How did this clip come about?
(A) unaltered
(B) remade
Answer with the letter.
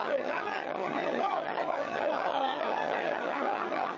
B